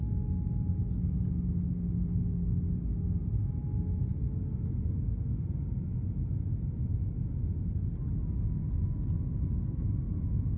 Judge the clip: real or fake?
real